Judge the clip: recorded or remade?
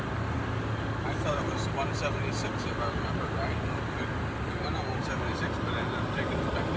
recorded